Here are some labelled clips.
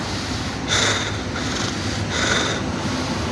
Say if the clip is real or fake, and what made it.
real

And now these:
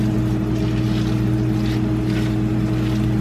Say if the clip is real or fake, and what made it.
real